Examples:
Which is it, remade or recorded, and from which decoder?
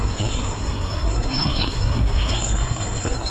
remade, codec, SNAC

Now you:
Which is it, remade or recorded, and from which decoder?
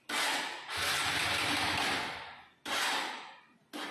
recorded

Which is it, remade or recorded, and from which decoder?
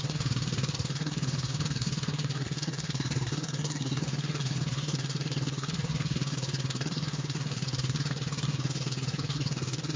remade, codec, SNAC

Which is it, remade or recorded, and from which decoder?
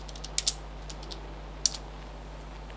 recorded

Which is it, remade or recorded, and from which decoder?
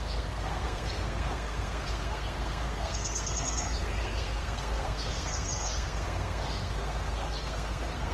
remade, codec, SNAC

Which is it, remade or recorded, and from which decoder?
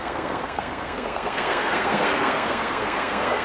remade, codec, SNAC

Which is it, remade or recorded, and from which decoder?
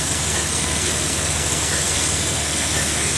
remade, codec, SNAC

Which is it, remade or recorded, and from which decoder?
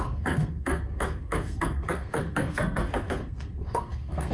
remade, codec, SNAC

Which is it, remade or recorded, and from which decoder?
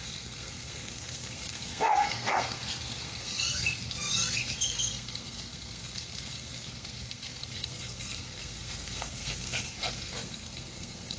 remade, codec, SNAC